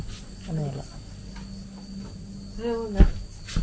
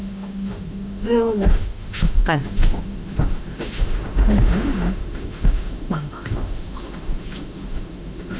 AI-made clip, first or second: second